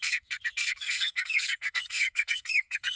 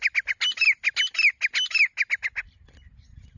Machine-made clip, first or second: first